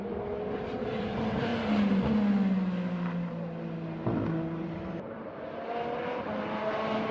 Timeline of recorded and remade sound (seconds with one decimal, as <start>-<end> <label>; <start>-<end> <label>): 0.0-7.1 recorded